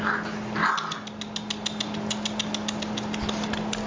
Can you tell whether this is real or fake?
real